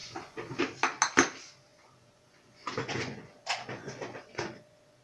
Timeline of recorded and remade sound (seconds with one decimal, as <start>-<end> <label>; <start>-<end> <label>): 0.0-0.6 remade; 0.6-1.7 recorded; 1.7-5.0 remade